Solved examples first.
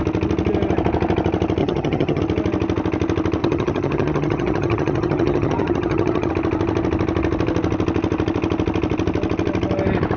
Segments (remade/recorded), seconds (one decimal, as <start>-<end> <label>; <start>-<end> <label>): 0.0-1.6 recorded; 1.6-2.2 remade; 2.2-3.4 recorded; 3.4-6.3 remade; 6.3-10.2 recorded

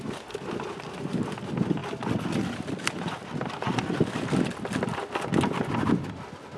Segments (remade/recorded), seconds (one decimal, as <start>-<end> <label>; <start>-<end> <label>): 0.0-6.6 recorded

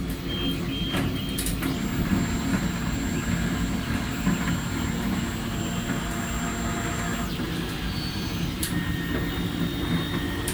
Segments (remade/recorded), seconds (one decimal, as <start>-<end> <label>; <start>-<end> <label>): 0.0-10.5 recorded

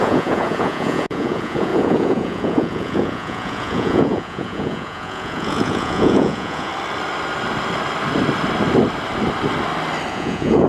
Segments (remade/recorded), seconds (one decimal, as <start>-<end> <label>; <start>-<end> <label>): 0.0-6.7 remade; 6.7-10.1 recorded; 10.1-10.7 remade